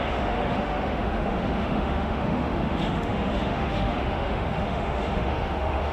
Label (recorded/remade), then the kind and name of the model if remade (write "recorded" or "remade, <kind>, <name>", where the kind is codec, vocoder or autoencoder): remade, autoencoder, DAC-VAE